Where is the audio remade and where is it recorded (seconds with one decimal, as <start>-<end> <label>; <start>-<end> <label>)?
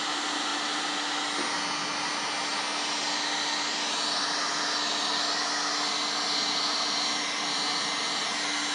0.0-8.7 recorded